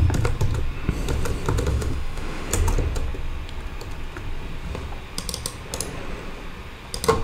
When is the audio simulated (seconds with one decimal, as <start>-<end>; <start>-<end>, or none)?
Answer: 1.7-2.5